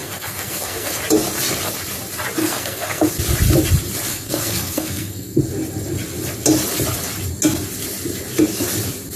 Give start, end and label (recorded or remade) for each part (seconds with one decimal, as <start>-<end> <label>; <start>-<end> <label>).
0.0-1.0 remade; 1.0-2.4 recorded; 2.4-3.1 remade; 3.1-4.1 recorded; 4.1-5.4 remade; 5.4-9.2 recorded